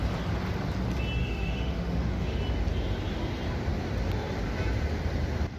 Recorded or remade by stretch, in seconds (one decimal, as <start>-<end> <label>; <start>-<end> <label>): 0.0-1.2 recorded; 1.2-2.4 remade; 2.4-5.6 recorded